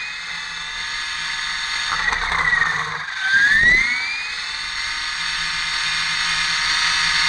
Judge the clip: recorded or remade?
recorded